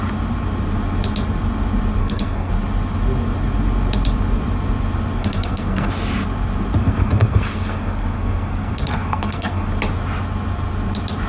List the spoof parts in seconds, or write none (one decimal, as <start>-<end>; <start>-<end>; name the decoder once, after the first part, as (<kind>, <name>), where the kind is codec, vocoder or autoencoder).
2.0-2.5 (codec, SNAC); 5.2-5.9; 6.8-9.7